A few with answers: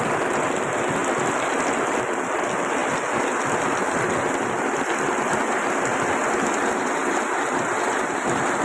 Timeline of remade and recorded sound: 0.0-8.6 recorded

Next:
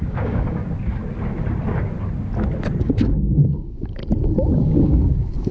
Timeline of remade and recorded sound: 0.0-0.6 remade; 0.6-2.8 recorded; 2.8-4.0 remade; 4.0-4.5 recorded; 4.5-5.5 remade

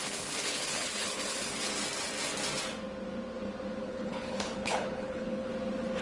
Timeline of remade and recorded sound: 0.0-1.7 remade; 1.7-3.8 recorded; 3.8-5.5 remade; 5.5-6.0 recorded